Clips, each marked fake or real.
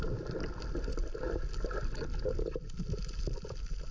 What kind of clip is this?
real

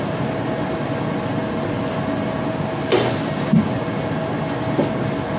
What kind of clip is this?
real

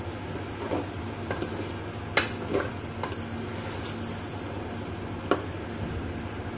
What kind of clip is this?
real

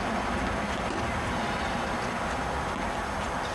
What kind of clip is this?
real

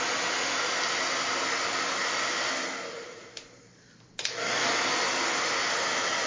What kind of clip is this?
real